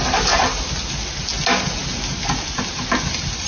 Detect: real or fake real